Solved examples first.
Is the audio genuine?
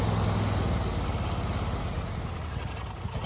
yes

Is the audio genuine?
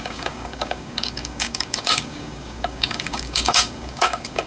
no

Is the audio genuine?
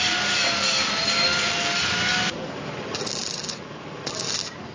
yes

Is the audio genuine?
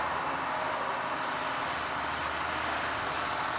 yes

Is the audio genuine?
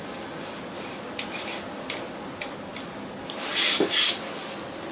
yes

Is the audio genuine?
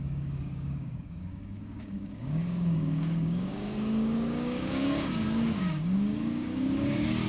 no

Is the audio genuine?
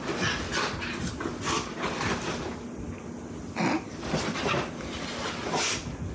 yes